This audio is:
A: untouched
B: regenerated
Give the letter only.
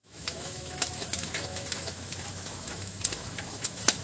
B